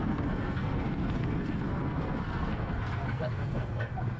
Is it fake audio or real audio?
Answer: fake